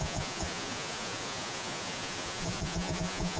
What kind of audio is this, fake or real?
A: fake